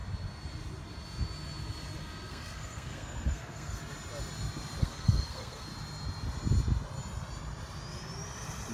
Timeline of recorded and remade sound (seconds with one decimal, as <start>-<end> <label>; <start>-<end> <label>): 0.0-2.3 recorded; 2.3-3.8 remade; 3.8-4.8 recorded; 4.8-5.7 remade; 5.7-8.7 recorded